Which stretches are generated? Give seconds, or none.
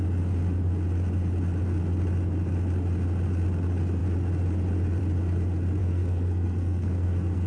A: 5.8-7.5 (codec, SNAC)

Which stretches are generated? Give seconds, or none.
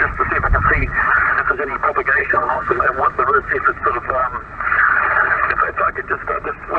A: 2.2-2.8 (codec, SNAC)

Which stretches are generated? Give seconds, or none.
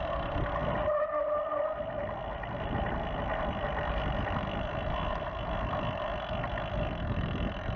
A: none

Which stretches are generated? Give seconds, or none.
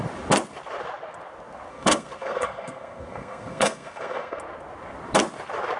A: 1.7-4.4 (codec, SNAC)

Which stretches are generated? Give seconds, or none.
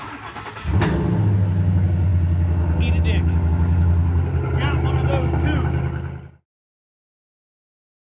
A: none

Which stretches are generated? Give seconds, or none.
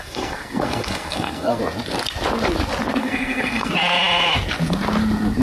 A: 0.0-1.6 (codec, SNAC); 3.0-3.7